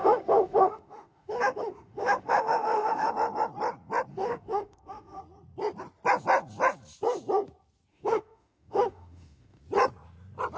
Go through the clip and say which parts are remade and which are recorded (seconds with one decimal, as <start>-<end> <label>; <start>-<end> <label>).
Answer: 0.0-3.1 remade; 3.1-4.1 recorded; 4.1-5.2 remade; 5.2-7.9 recorded; 7.9-9.6 remade; 9.6-10.6 recorded